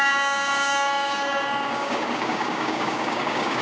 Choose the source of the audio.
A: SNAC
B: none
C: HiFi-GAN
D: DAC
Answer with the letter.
D